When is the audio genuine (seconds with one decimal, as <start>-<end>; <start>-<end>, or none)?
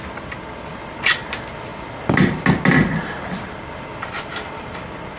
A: 0.0-5.2